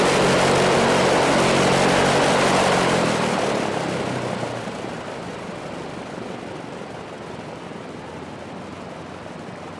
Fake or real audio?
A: real